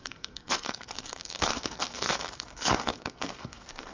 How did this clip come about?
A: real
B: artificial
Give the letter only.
B